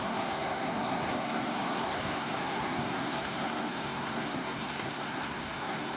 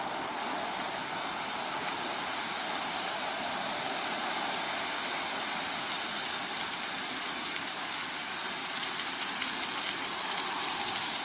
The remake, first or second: first